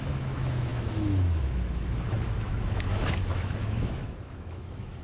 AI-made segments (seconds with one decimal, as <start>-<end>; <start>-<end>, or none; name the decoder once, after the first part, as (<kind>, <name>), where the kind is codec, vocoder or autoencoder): 0.0-5.0 (autoencoder, DAC-VAE)